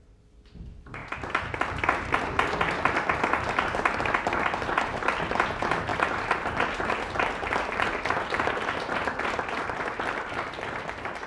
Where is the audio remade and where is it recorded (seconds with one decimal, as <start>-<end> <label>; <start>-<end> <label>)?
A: 0.0-11.3 recorded